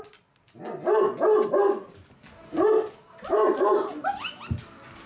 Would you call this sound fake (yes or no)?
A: no